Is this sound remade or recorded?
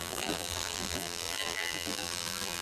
remade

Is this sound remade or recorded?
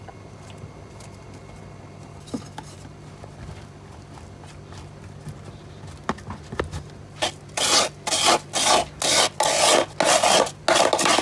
recorded